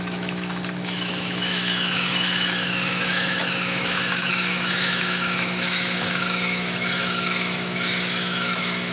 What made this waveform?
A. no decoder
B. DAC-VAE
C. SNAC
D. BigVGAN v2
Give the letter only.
B